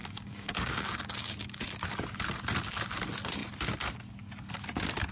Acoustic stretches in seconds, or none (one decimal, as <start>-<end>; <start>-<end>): 1.6-5.1